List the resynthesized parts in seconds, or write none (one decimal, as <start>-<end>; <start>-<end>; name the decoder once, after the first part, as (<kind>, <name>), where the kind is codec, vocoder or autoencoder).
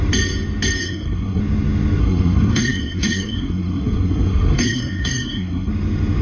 0.8-1.4 (codec, SNAC); 2.0-5.7